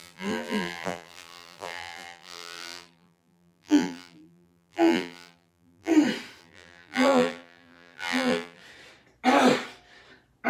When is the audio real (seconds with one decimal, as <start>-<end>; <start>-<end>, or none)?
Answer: 5.9-6.4; 8.6-10.5